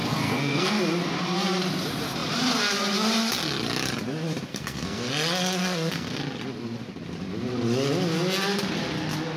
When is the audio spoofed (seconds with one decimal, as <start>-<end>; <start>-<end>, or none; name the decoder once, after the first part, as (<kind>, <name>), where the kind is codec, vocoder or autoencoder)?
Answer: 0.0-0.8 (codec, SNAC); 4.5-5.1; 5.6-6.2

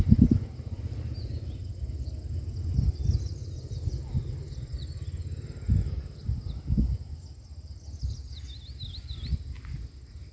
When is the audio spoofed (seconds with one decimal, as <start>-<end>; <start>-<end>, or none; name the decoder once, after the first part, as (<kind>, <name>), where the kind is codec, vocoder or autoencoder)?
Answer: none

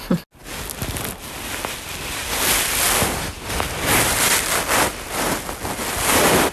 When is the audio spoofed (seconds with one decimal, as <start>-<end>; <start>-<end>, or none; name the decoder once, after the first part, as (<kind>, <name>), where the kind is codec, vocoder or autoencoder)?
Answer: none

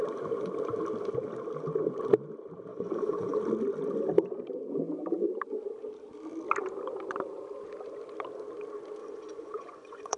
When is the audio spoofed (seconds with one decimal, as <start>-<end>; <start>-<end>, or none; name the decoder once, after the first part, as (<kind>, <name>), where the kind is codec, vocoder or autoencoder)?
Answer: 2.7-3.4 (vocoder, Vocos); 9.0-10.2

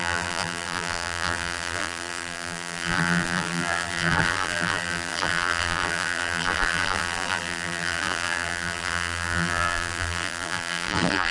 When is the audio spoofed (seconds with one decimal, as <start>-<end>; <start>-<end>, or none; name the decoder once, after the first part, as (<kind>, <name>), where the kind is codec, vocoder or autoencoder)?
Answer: 0.0-11.3 (vocoder, BigVGAN v2)